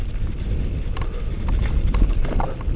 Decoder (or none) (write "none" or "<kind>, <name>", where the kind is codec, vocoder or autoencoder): none